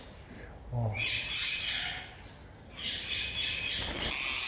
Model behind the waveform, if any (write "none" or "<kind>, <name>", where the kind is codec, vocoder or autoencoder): none